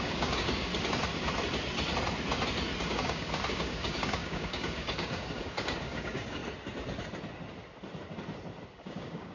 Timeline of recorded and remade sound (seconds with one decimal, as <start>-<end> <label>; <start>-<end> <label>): 0.0-0.7 remade; 0.7-2.8 recorded; 2.8-6.4 remade; 6.4-8.7 recorded; 8.7-9.3 remade